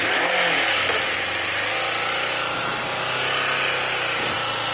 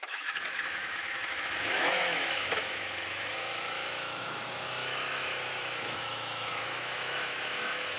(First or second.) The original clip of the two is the first